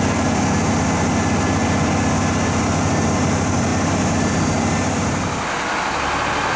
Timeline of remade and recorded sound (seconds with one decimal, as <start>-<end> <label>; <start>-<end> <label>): 0.0-6.6 recorded